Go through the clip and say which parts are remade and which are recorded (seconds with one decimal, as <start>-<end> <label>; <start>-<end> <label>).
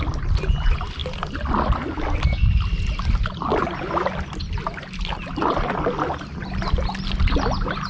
0.0-7.9 recorded